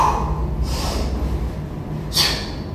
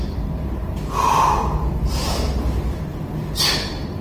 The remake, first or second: second